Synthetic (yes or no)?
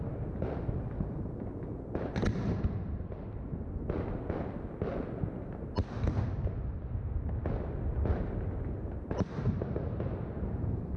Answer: no